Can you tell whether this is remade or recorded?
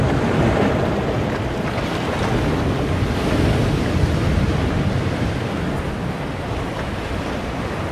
recorded